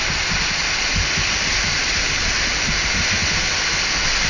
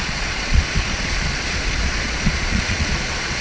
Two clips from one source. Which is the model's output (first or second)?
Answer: second